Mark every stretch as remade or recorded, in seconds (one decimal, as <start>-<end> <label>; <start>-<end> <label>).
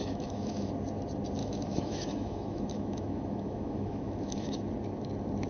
0.0-0.7 remade; 0.7-1.4 recorded; 1.4-4.6 remade; 4.6-5.5 recorded